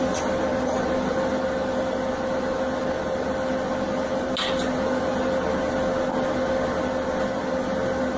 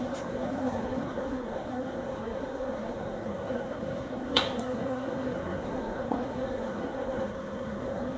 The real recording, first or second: first